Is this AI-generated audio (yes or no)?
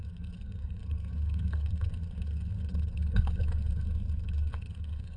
yes